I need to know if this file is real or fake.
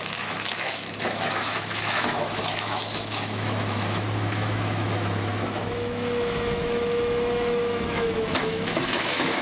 fake